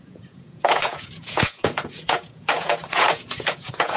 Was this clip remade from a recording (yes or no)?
yes